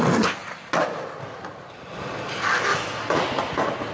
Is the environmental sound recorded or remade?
recorded